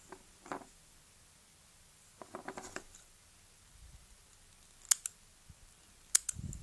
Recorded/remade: recorded